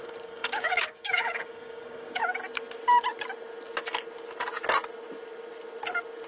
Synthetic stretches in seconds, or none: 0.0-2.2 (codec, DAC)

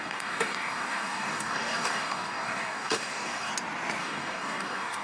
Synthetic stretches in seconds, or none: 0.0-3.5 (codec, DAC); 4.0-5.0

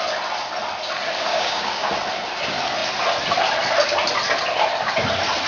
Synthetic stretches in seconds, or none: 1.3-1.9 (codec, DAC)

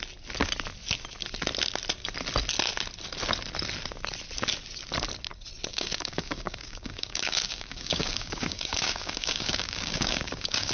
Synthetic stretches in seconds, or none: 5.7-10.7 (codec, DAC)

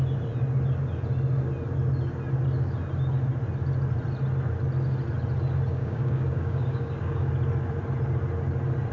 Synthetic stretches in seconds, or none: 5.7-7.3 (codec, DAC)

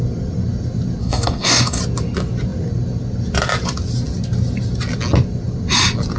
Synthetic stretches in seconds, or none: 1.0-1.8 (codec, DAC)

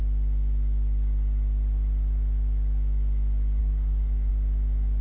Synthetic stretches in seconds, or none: 3.6-4.3 (codec, DAC)

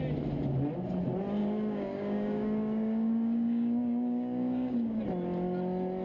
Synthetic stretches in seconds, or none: 1.4-5.0 (codec, DAC)